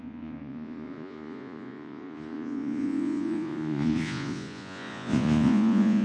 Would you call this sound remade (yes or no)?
yes